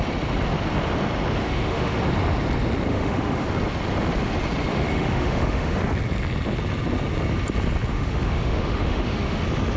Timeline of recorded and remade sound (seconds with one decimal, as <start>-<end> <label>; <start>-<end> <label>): 0.0-1.4 recorded; 1.4-2.0 remade; 2.0-2.9 recorded; 2.9-3.5 remade; 3.5-4.7 recorded; 4.7-5.8 remade; 5.8-7.9 recorded; 7.9-9.4 remade; 9.4-9.8 recorded